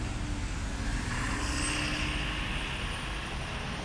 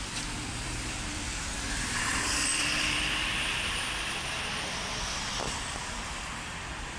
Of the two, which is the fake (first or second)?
second